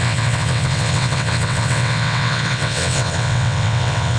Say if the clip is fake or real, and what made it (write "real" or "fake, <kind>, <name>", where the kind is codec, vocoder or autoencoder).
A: fake, vocoder, WaveNeXt